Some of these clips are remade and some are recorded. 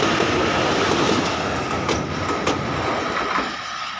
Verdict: recorded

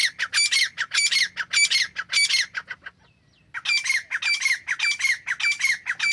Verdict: recorded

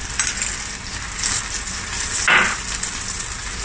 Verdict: recorded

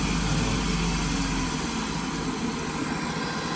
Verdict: recorded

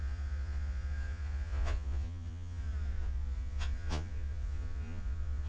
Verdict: remade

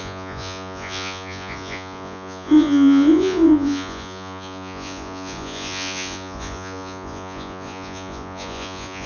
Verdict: remade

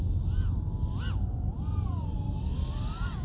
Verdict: recorded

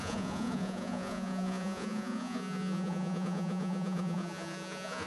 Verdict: remade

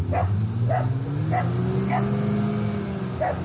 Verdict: recorded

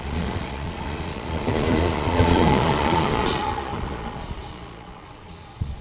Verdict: remade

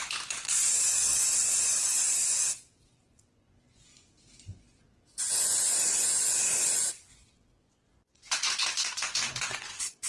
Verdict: remade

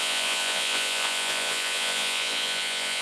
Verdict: remade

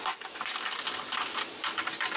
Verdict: recorded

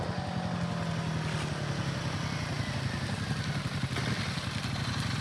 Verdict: recorded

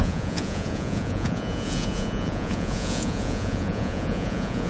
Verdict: remade